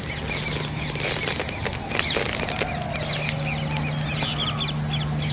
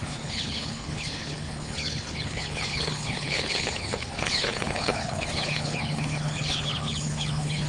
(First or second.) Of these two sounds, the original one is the first